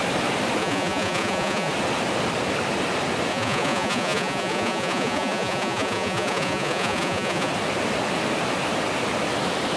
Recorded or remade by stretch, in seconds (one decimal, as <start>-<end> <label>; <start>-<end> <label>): 0.0-0.6 recorded; 0.6-1.7 remade; 1.7-3.3 recorded; 3.3-7.5 remade; 7.5-9.8 recorded